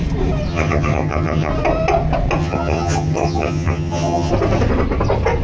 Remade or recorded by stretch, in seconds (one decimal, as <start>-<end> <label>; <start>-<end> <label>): 0.0-0.5 recorded; 0.5-1.5 remade; 1.5-2.4 recorded; 2.4-4.3 remade; 4.3-5.4 recorded